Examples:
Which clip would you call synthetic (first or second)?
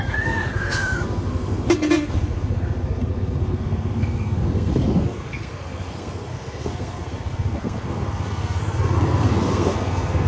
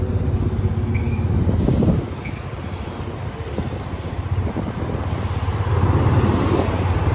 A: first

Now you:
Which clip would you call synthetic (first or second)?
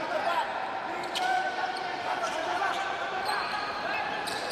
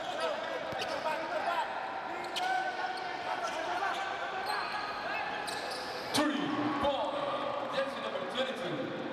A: first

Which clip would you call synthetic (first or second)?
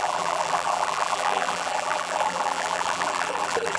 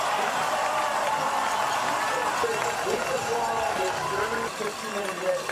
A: first